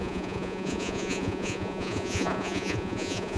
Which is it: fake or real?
fake